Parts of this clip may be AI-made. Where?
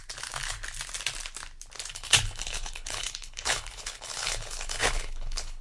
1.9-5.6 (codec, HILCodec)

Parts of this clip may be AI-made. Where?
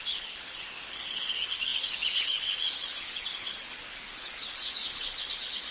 0.0-5.7 (codec, HILCodec)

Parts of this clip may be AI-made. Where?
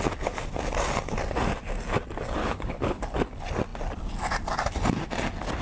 2.4-3.0 (codec, HILCodec)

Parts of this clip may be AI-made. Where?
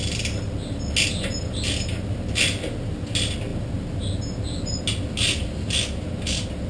none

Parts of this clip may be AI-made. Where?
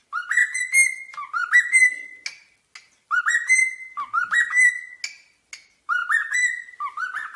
none